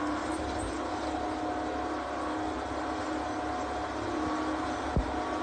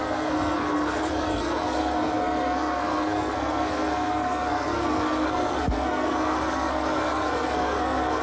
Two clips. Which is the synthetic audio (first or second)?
second